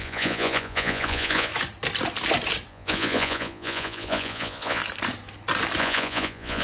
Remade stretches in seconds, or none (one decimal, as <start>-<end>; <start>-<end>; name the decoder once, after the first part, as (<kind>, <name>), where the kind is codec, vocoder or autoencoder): 0.0-1.5 (vocoder, Vocos); 2.7-4.8; 5.8-6.6